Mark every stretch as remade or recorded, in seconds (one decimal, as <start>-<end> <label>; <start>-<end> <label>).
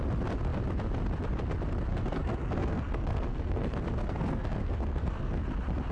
0.0-1.9 recorded; 1.9-5.4 remade; 5.4-5.9 recorded